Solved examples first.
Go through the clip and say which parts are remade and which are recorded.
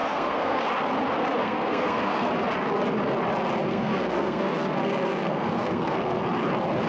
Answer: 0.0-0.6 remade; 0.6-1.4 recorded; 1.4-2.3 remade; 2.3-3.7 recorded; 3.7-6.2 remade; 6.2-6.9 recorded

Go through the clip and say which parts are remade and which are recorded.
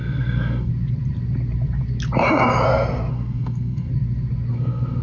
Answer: 0.0-0.7 remade; 0.7-3.1 recorded; 3.1-3.9 remade; 3.9-4.5 recorded; 4.5-5.0 remade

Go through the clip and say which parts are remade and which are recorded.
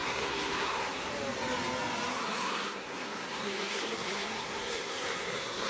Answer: 0.0-1.1 remade; 1.1-2.1 recorded; 2.1-5.7 remade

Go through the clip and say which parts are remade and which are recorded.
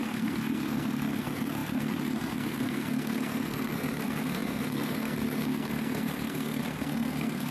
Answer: 0.0-7.5 remade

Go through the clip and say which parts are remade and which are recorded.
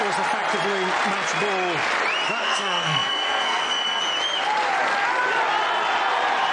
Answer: 0.0-2.4 recorded; 2.4-4.0 remade; 4.0-6.5 recorded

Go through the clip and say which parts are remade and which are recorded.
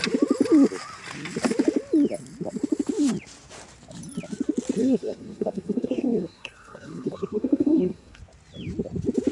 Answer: 0.0-4.8 recorded; 4.8-8.2 remade; 8.2-9.3 recorded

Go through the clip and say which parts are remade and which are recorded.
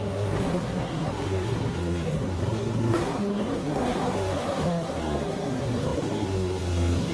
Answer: 0.0-7.1 remade